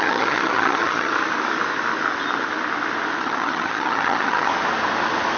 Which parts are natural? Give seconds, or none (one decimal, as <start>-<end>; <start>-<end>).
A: 1.1-3.2; 4.5-5.4